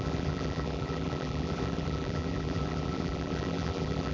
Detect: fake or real fake